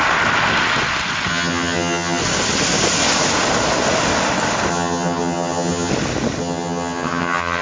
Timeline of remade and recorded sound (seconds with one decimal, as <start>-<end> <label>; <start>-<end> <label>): 0.0-1.3 recorded; 1.3-2.2 remade; 2.2-4.7 recorded; 4.7-5.9 remade; 5.9-6.4 recorded; 6.4-7.6 remade